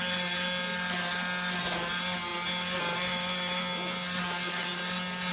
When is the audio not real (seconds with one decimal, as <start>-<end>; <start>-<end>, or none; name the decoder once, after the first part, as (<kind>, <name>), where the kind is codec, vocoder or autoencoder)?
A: none